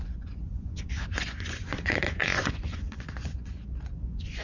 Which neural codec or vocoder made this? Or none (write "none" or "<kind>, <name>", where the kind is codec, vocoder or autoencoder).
vocoder, Vocos